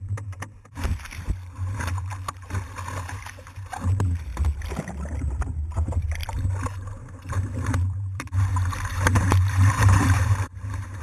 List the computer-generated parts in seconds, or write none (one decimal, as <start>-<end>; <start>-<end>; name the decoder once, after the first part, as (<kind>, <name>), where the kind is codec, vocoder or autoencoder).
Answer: 0.0-2.1 (vocoder, BigVGAN v2); 2.9-4.3; 5.4-6.2; 7.8-11.0